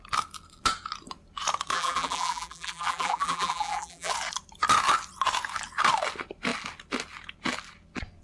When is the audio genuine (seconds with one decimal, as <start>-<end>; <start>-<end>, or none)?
0.0-1.7; 4.1-8.2